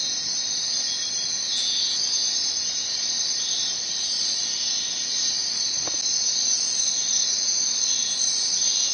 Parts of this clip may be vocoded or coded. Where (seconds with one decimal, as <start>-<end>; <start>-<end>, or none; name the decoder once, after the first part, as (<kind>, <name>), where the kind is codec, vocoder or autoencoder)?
none